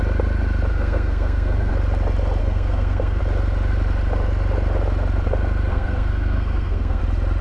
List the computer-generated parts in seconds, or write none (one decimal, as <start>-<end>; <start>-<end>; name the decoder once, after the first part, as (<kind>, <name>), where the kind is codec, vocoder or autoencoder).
0.7-1.7 (codec, SNAC); 2.4-3.2; 5.7-7.0